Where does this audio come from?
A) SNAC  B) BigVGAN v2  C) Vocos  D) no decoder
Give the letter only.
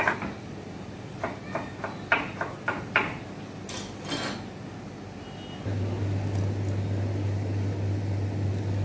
D